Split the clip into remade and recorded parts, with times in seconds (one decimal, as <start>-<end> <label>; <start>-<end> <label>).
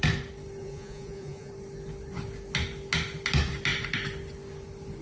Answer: 0.0-0.6 recorded; 0.6-1.5 remade; 1.5-5.0 recorded